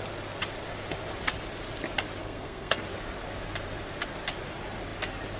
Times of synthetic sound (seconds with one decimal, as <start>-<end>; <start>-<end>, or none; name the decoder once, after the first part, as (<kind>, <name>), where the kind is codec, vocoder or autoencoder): 2.2-2.8 (codec, SNAC)